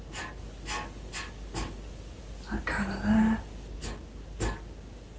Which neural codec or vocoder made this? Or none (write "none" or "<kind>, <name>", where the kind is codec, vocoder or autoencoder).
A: none